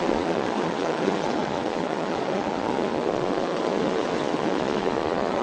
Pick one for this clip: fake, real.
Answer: fake